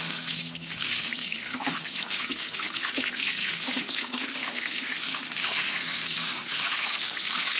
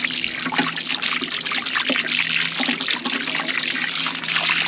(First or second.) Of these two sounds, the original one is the second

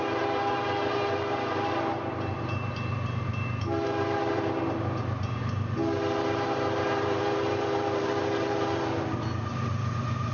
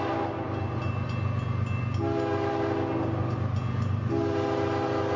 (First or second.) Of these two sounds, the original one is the second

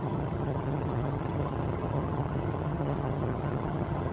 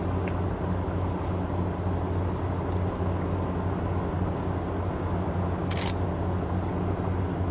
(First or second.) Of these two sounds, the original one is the second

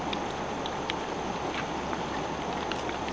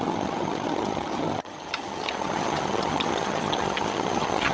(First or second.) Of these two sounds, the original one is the first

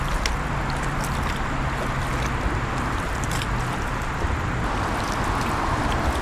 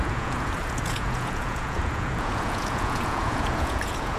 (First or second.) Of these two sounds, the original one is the first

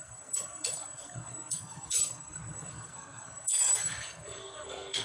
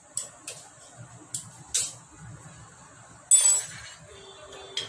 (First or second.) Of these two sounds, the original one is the second